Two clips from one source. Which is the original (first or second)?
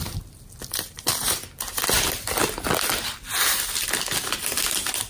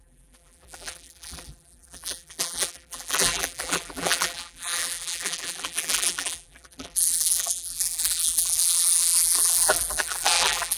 first